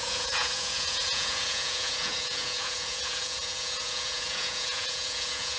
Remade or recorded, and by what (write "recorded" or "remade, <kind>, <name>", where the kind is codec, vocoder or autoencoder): remade, vocoder, Vocos